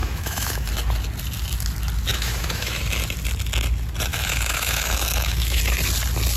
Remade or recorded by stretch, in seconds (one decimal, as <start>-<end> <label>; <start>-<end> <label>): 0.0-0.7 remade; 0.7-2.1 recorded; 2.1-2.8 remade; 2.8-4.1 recorded; 4.1-5.6 remade; 5.6-6.4 recorded